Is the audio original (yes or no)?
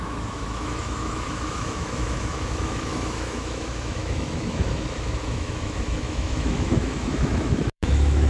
no